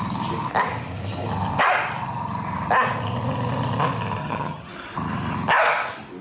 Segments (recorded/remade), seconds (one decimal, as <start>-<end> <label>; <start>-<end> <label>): 0.0-4.2 recorded; 4.2-4.7 remade; 4.7-6.2 recorded

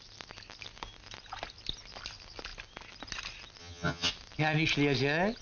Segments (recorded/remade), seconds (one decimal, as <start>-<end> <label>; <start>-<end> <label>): 0.0-3.6 recorded; 3.6-4.1 remade; 4.1-5.4 recorded